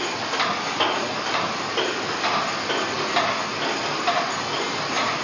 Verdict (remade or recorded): recorded